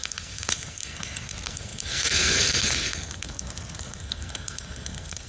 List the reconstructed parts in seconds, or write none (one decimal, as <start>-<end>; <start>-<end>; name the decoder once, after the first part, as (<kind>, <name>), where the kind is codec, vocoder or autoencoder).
0.0-5.3 (codec, SNAC)